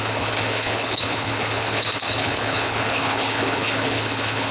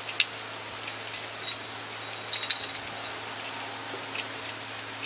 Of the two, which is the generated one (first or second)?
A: first